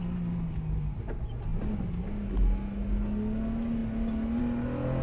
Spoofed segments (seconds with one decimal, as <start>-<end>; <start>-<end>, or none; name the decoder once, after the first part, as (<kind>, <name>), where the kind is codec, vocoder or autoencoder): none